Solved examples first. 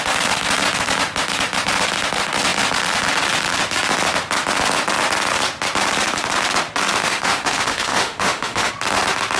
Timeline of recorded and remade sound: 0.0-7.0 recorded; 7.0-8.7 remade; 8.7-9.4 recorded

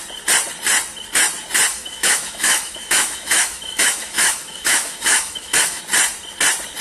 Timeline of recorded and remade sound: 0.0-1.7 recorded; 1.7-5.8 remade; 5.8-6.8 recorded

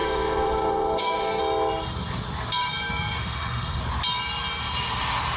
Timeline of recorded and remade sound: 0.0-1.4 remade; 1.4-3.2 recorded; 3.2-3.8 remade; 3.8-5.4 recorded

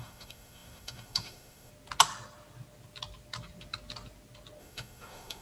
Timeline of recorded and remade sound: 0.0-1.7 remade; 1.7-4.6 recorded; 4.6-5.4 remade

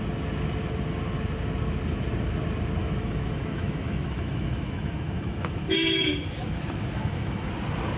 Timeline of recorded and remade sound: 0.0-2.8 recorded; 2.8-7.5 remade; 7.5-8.0 recorded

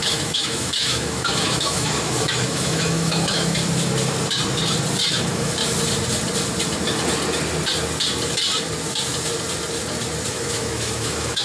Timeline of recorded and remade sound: 0.0-3.6 remade; 3.6-5.1 recorded; 5.1-5.6 remade; 5.6-10.3 recorded; 10.3-11.4 remade

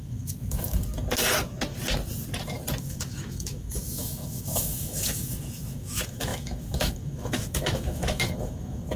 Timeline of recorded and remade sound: 0.0-0.8 remade; 0.8-2.8 recorded; 2.8-9.0 remade

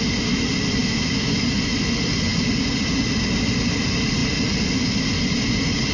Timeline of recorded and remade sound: 0.0-0.8 recorded; 0.8-1.4 remade; 1.4-5.9 recorded